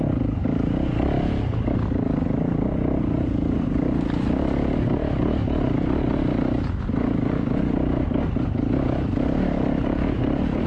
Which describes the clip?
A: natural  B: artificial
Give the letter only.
A